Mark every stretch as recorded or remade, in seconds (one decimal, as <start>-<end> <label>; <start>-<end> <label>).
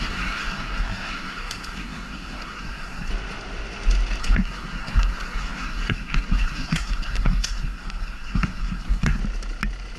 0.0-3.1 remade; 3.1-4.2 recorded; 4.2-9.2 remade; 9.2-10.0 recorded